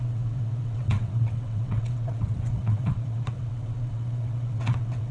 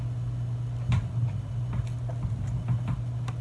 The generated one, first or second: first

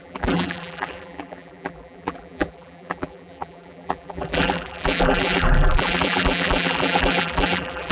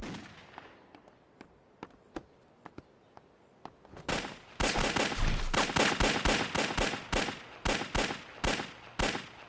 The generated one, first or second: first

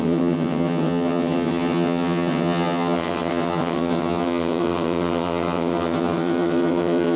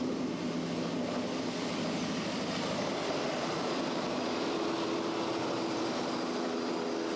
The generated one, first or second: first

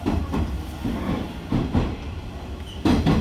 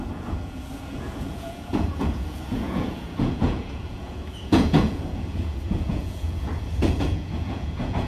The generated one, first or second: second